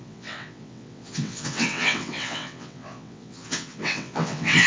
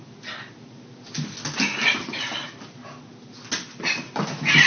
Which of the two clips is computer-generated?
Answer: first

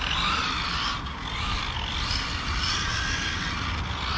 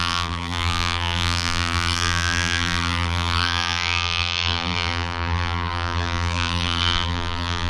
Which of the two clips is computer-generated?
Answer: second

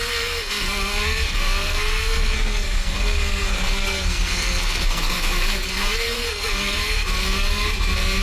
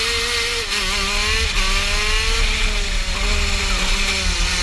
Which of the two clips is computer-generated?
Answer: first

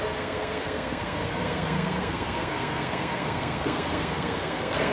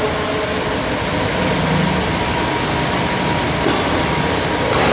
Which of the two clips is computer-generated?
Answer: first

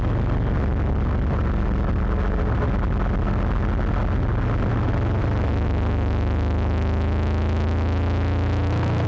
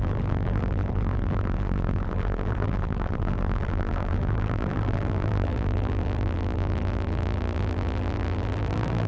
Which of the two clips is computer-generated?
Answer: second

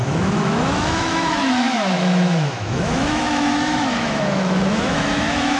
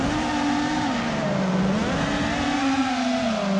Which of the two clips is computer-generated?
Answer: first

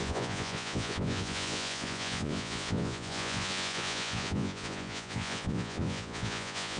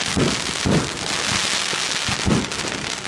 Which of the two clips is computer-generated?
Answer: first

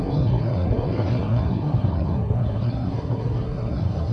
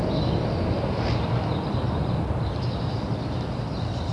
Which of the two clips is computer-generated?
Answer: first